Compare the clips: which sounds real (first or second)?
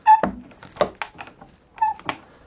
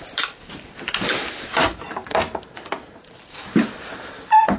first